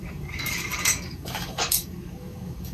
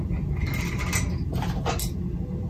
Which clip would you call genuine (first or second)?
second